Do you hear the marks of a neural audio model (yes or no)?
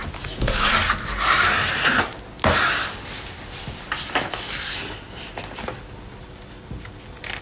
no